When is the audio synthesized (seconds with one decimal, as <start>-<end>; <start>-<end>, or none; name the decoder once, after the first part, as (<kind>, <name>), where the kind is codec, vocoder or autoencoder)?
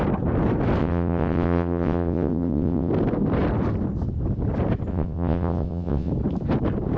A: 0.8-2.9 (vocoder, WaveNeXt); 4.9-6.1